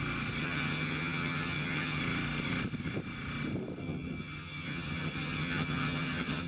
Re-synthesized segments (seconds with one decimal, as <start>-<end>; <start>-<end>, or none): 0.4-2.0; 3.8-6.5